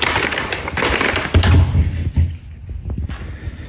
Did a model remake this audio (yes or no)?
no